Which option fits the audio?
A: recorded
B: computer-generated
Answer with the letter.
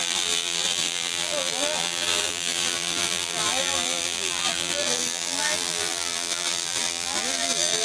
B